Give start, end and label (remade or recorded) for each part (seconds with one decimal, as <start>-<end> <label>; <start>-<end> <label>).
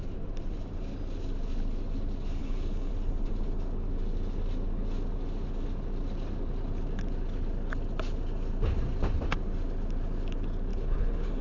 0.0-2.4 recorded; 2.4-2.9 remade; 2.9-10.7 recorded; 10.7-11.4 remade